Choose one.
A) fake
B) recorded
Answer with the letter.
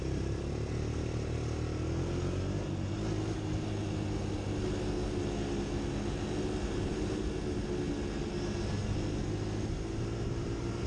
B